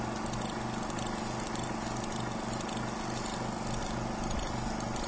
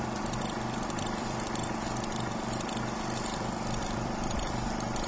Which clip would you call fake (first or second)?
second